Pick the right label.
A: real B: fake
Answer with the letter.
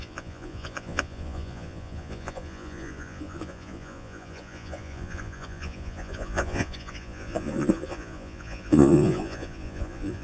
B